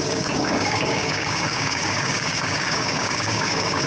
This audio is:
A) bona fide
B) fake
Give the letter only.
B